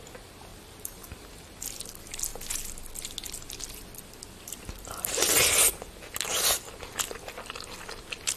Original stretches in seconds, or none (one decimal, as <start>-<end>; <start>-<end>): 0.0-0.5; 1.3-8.4